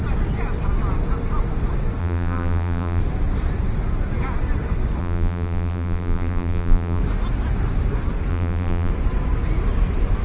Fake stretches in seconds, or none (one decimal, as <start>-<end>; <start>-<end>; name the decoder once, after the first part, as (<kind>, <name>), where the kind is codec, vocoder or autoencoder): 2.0-3.0 (vocoder, BigVGAN v2); 5.0-7.0; 8.3-8.9